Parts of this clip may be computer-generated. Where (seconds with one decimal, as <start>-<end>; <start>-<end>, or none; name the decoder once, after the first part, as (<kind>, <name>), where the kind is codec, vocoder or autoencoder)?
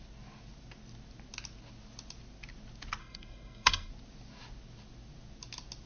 3.0-3.9 (codec, SNAC)